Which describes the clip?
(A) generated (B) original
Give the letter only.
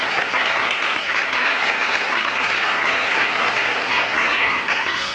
A